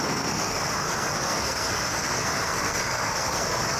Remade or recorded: remade